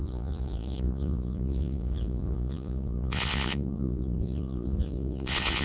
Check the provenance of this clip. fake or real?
fake